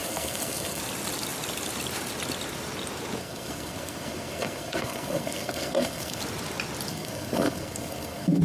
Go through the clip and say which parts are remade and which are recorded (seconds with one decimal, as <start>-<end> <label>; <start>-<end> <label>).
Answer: 0.0-0.8 remade; 0.8-3.2 recorded; 3.2-6.2 remade; 6.2-6.9 recorded; 6.9-8.4 remade